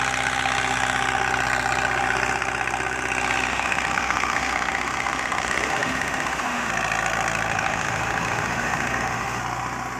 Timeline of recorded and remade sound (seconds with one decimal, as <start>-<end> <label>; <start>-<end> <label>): 0.0-3.5 recorded; 3.5-6.7 remade; 6.7-7.5 recorded; 7.5-9.4 remade; 9.4-10.0 recorded